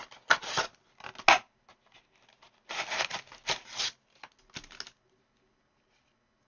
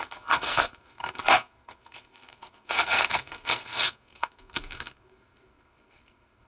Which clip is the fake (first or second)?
second